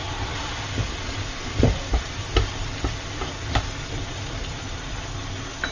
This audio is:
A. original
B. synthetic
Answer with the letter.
B